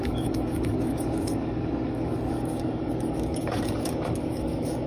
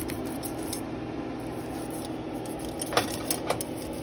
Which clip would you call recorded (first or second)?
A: second